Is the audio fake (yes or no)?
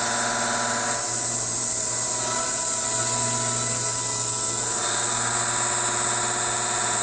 no